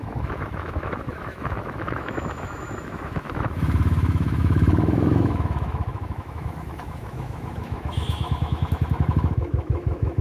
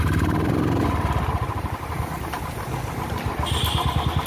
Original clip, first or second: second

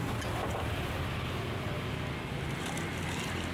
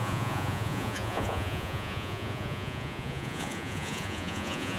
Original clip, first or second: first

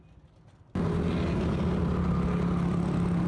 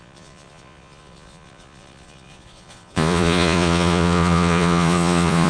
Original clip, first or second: first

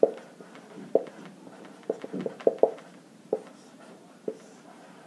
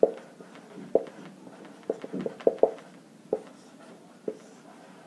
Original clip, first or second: second